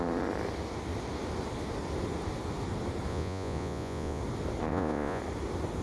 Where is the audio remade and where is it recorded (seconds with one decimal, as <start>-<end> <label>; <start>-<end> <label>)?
0.0-3.1 recorded; 3.1-4.2 remade; 4.2-4.7 recorded; 4.7-5.2 remade; 5.2-5.8 recorded